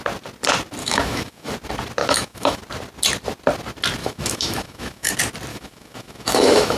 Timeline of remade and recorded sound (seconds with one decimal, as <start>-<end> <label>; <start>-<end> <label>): 0.0-0.8 recorded; 0.8-1.5 remade; 1.5-2.0 recorded; 2.0-2.6 remade; 2.6-4.0 recorded; 4.0-5.1 remade; 5.1-5.5 recorded; 5.5-6.8 remade